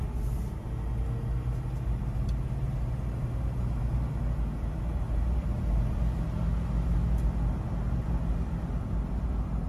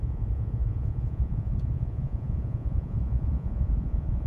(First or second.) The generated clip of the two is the second